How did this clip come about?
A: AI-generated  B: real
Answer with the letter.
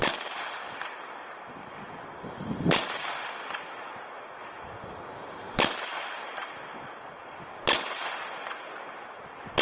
B